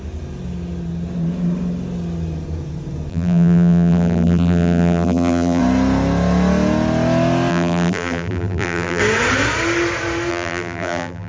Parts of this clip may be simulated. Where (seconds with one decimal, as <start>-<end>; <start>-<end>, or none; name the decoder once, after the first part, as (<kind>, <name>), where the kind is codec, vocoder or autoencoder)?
3.1-5.6 (vocoder, BigVGAN v2); 7.5-9.0; 10.3-11.3